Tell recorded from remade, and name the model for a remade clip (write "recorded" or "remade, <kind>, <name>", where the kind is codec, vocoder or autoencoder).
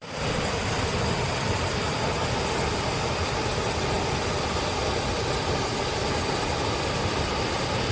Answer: remade, vocoder, BigVGAN v2